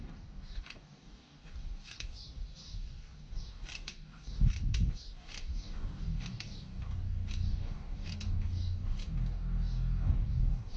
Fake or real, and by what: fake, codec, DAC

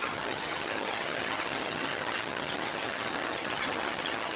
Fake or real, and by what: fake, vocoder, HiFi-GAN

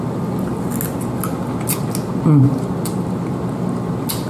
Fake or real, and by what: real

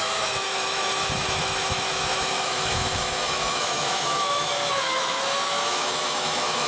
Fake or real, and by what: fake, autoencoder, DAC-VAE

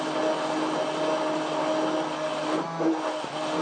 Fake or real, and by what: real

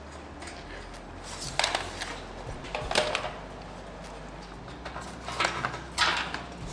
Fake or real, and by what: real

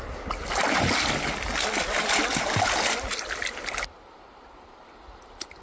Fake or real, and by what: real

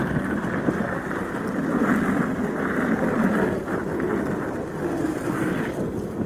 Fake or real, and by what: real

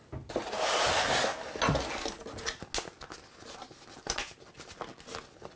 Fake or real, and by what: real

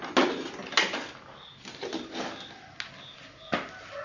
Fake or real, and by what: real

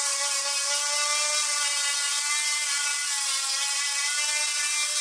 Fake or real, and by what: real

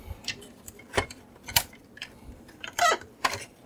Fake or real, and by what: fake, vocoder, BigVGAN v2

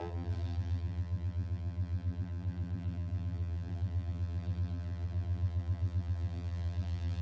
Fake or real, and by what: fake, vocoder, BigVGAN v2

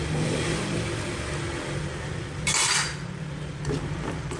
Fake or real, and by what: real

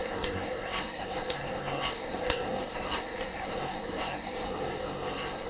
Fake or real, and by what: fake, codec, SNAC